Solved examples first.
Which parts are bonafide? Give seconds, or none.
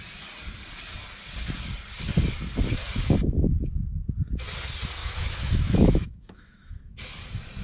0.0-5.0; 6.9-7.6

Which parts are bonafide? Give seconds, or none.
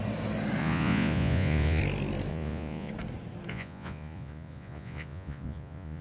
0.0-0.6; 1.8-2.3; 2.9-3.5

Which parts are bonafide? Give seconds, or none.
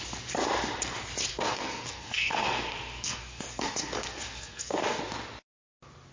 0.0-1.3; 5.0-6.1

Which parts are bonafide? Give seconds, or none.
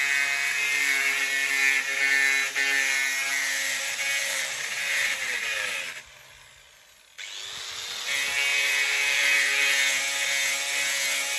0.0-3.3; 5.8-8.5; 9.5-11.4